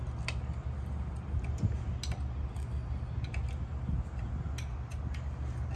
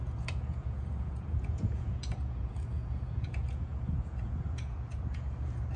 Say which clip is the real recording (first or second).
first